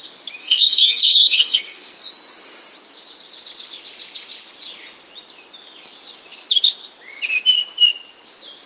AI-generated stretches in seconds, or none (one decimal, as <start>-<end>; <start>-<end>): 0.4-2.1